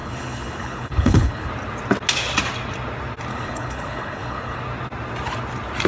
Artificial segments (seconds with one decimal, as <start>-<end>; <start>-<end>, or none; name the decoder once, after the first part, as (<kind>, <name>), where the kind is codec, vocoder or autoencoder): 0.0-1.5 (codec, HILCodec); 3.3-4.6